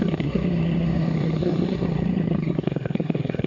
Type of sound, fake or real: fake